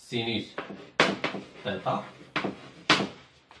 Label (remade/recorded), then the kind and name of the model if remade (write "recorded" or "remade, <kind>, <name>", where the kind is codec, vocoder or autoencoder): recorded